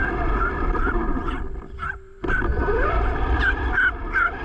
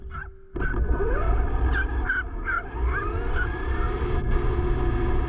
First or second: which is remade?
first